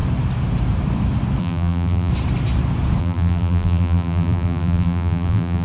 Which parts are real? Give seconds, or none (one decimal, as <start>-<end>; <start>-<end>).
0.0-1.4; 2.1-3.0